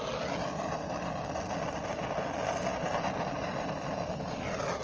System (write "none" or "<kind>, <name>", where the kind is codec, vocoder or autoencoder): none